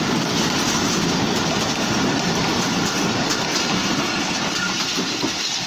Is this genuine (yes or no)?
yes